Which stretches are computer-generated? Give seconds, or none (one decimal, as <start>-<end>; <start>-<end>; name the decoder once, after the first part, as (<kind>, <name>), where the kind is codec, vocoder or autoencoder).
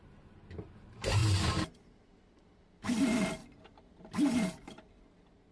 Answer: 1.2-3.0 (vocoder, BigVGAN v2); 3.4-5.0